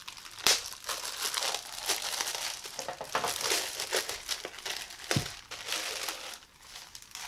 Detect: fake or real real